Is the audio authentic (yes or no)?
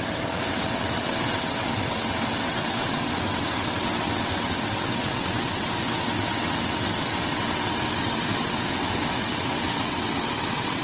no